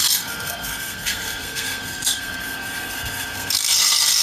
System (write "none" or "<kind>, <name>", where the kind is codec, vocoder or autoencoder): codec, SNAC